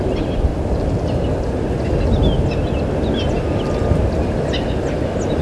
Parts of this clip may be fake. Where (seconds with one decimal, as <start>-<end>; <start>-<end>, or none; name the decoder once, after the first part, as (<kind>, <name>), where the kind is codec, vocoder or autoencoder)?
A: none